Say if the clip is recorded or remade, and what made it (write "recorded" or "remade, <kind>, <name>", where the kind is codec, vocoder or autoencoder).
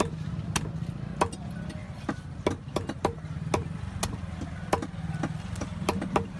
recorded